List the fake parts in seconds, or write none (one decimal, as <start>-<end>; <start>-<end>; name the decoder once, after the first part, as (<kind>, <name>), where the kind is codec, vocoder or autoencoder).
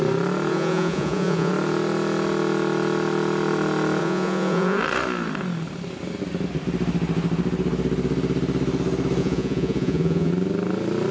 0.5-1.5 (vocoder, Vocos); 4.0-4.8; 9.2-10.3